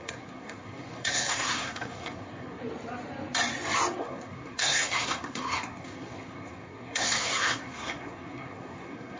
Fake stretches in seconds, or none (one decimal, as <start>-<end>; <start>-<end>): 0.0-2.6; 4.0-9.2